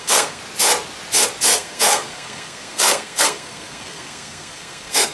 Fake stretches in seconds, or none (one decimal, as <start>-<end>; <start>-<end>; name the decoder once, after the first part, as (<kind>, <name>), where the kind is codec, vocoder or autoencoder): 0.0-0.4 (codec, SNAC); 1.4-5.1